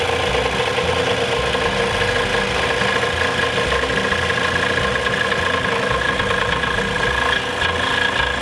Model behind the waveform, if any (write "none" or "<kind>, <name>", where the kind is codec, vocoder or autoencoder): none